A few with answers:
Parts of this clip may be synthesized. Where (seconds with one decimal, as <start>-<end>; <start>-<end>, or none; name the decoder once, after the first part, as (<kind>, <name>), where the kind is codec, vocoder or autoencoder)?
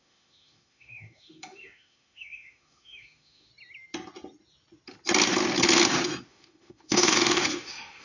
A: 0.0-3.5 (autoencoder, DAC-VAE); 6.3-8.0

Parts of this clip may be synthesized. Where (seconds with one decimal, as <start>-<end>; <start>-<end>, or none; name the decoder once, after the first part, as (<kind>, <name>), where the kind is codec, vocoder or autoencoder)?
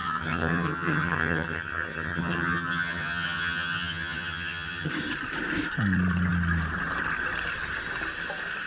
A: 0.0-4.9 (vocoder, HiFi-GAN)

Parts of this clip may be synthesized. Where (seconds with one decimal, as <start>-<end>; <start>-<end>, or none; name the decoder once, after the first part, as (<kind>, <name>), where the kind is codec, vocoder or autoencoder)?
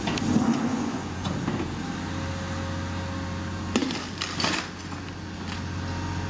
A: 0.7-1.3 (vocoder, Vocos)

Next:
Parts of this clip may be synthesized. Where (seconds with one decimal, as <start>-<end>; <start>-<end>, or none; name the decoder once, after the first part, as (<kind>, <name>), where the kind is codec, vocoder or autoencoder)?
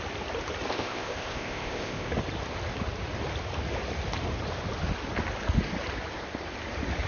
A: 0.7-2.1 (codec, ZipCodec)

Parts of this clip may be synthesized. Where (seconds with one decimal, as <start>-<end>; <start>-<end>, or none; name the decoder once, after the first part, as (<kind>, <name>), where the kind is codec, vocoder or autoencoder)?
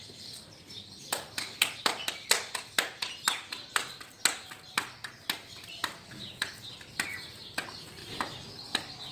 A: none